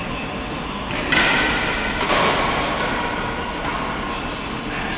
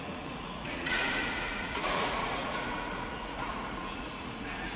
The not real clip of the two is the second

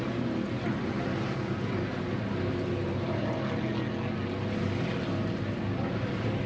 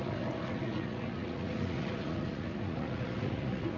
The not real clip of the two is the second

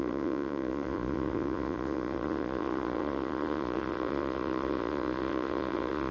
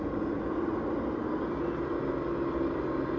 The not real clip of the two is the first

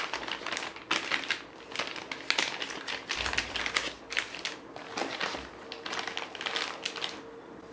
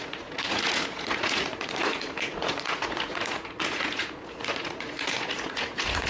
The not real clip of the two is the second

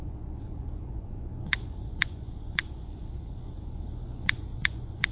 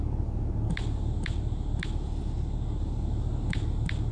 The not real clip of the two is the first